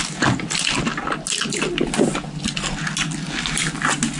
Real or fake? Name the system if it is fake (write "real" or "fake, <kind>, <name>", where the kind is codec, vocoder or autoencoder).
real